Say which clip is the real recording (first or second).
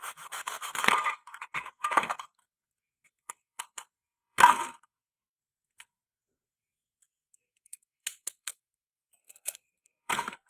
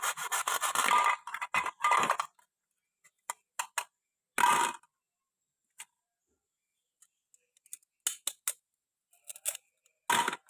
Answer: second